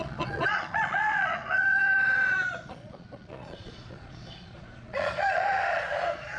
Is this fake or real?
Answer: fake